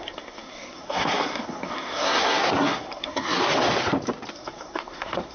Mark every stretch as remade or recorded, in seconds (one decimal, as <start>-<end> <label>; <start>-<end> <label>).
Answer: 0.0-3.4 remade; 3.4-4.3 recorded; 4.3-5.3 remade